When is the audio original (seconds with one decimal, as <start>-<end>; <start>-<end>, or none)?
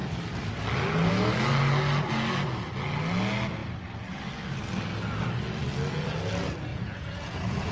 0.0-6.7